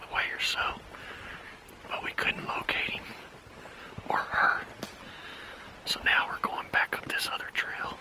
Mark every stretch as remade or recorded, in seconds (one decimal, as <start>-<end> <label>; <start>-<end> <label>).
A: 0.0-1.9 remade; 1.9-8.0 recorded

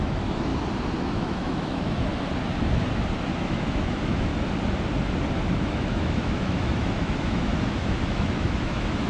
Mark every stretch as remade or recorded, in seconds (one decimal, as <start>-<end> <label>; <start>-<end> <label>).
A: 0.0-0.5 remade; 0.5-1.0 recorded; 1.0-2.1 remade; 2.1-3.3 recorded; 3.3-4.3 remade; 4.3-5.5 recorded; 5.5-9.1 remade

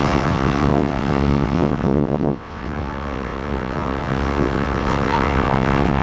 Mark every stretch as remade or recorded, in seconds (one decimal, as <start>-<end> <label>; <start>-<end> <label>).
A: 0.0-6.0 remade